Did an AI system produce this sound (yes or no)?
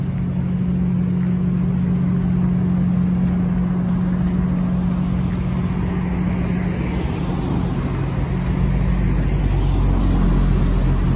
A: no